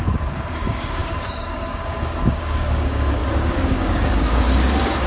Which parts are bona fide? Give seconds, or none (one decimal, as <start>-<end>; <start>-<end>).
none